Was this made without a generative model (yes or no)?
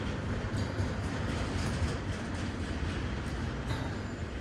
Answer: yes